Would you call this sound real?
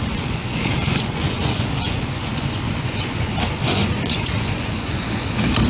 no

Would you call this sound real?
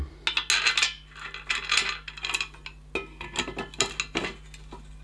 yes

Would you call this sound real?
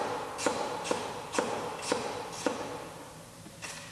yes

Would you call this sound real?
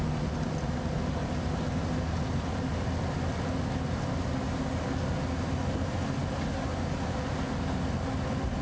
yes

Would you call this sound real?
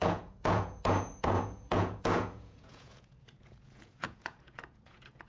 no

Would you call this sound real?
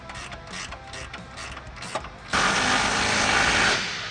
yes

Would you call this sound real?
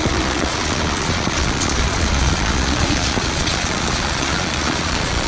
no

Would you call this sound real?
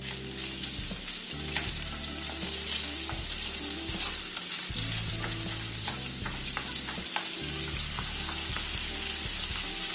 yes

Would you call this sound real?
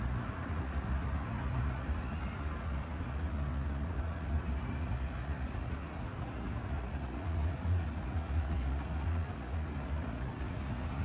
no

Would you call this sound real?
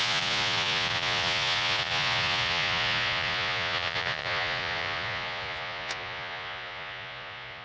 no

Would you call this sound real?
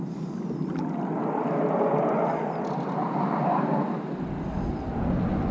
yes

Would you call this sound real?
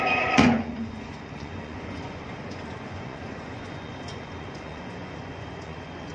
no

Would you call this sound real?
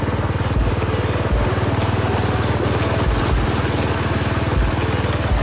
yes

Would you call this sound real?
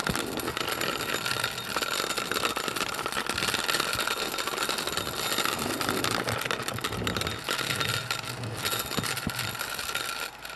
yes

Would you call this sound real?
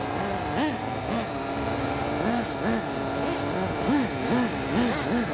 yes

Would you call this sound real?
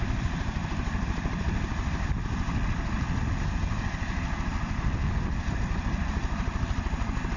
yes